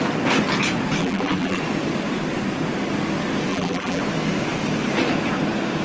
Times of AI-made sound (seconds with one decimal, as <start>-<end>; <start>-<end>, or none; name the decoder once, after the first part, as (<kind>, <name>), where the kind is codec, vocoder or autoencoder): 1.0-1.6 (vocoder, BigVGAN v2); 3.5-4.0